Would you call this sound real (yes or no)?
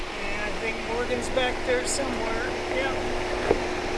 yes